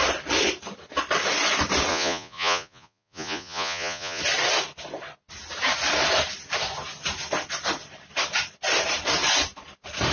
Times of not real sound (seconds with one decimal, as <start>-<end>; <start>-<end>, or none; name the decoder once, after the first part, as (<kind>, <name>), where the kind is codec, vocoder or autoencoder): 1.9-4.2 (vocoder, Vocos)